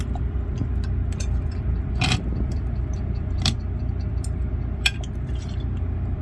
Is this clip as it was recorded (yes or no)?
no